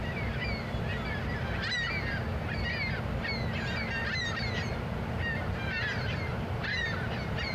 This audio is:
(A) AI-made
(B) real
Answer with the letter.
B